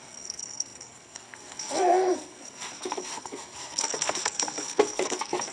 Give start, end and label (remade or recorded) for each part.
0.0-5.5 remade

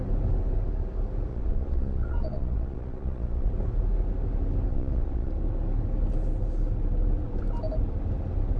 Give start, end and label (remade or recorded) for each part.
0.0-1.3 recorded; 1.3-3.5 remade; 3.5-4.7 recorded; 4.7-5.3 remade; 5.3-8.6 recorded

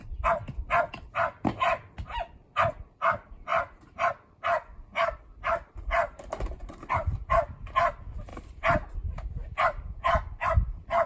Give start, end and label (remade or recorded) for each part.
0.0-3.5 recorded; 3.5-4.1 remade; 4.1-4.9 recorded; 4.9-7.9 remade; 7.9-8.3 recorded; 8.3-9.3 remade; 9.3-11.1 recorded

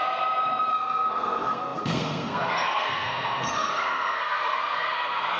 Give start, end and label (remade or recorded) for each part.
0.0-0.7 recorded; 0.7-5.4 remade

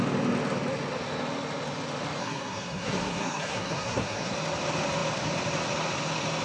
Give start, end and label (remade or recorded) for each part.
0.0-2.2 recorded; 2.2-4.3 remade; 4.3-6.4 recorded

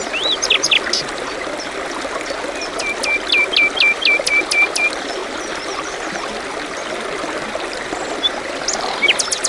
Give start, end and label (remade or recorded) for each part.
0.0-9.5 recorded

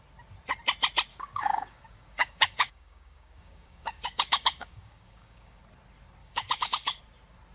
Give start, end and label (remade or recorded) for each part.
0.0-1.1 recorded; 1.1-5.6 remade; 5.6-6.2 recorded; 6.2-7.0 remade; 7.0-7.5 recorded

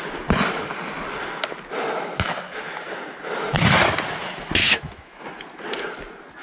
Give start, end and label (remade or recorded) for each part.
0.0-4.6 recorded; 4.6-5.2 remade; 5.2-6.4 recorded